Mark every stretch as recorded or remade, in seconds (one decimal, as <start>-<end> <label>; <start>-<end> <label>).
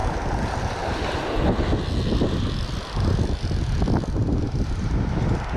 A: 0.0-5.6 recorded